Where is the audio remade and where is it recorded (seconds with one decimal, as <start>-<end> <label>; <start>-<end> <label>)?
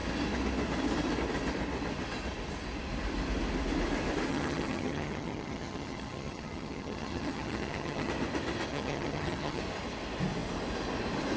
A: 0.0-4.3 recorded; 4.3-8.1 remade; 8.1-8.7 recorded; 8.7-9.6 remade; 9.6-11.4 recorded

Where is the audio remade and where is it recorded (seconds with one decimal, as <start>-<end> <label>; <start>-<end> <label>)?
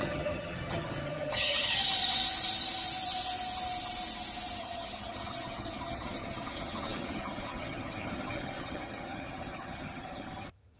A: 0.0-1.8 remade; 1.8-4.6 recorded; 4.6-10.8 remade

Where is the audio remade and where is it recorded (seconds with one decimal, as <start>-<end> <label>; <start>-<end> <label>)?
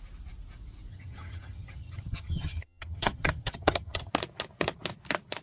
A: 0.0-0.9 recorded; 0.9-4.1 remade; 4.1-5.4 recorded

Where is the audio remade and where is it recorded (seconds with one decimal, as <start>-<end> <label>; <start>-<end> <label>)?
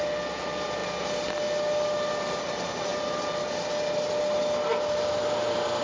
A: 0.0-5.8 recorded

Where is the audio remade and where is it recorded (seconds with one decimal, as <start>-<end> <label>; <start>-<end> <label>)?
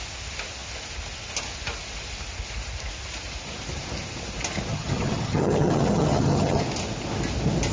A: 0.0-4.7 recorded; 4.7-6.6 remade; 6.6-7.7 recorded